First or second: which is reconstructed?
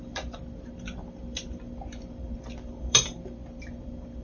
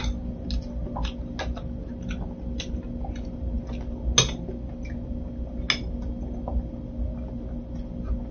first